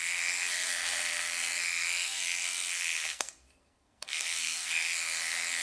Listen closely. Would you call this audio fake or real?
fake